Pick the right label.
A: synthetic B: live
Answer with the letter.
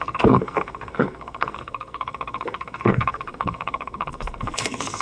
A